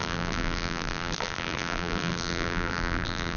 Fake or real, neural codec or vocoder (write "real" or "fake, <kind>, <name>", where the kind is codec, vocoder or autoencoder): fake, vocoder, BigVGAN v2